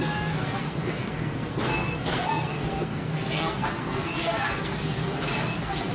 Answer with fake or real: fake